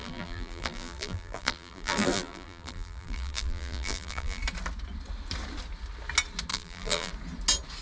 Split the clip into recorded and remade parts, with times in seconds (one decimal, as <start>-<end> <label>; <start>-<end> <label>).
0.0-4.4 remade; 4.4-6.5 recorded; 6.5-7.1 remade; 7.1-7.8 recorded